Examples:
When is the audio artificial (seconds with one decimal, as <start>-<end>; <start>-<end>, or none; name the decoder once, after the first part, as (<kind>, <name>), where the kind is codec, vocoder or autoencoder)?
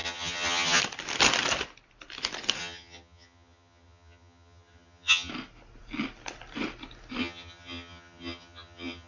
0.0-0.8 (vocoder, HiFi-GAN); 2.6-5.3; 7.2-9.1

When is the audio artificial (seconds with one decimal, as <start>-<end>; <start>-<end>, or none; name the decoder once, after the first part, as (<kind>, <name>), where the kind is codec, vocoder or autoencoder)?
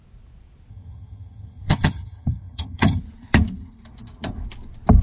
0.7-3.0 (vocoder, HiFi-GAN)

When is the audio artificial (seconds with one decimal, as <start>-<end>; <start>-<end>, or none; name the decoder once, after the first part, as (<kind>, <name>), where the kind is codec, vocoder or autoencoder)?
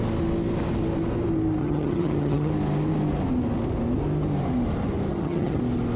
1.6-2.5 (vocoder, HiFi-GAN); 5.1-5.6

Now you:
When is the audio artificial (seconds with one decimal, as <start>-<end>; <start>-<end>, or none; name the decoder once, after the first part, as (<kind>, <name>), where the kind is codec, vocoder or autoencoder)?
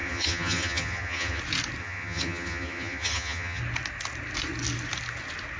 0.0-1.4 (vocoder, HiFi-GAN); 1.8-3.6